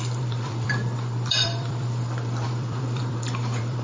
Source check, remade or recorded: remade